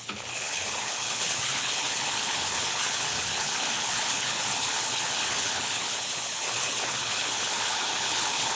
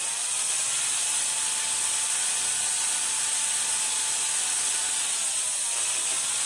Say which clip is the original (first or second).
second